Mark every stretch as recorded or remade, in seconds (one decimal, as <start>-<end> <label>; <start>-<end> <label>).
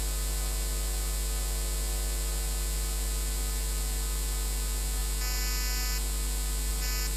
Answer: 0.0-7.2 recorded